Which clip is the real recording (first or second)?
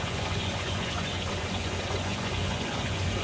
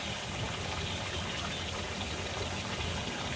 second